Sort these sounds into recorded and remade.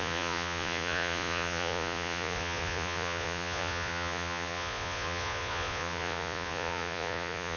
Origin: remade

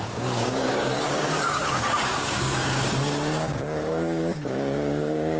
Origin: remade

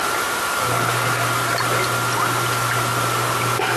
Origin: recorded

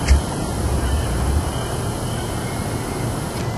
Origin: recorded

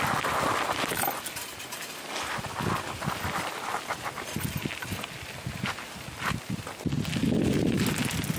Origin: recorded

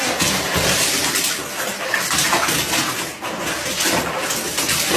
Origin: recorded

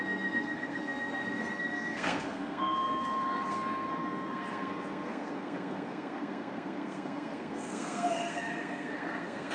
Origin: remade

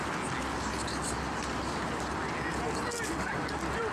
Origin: recorded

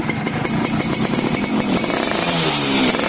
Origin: remade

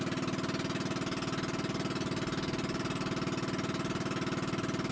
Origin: recorded